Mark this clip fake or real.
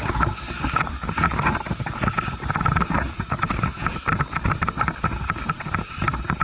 real